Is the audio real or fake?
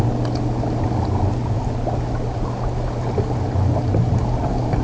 real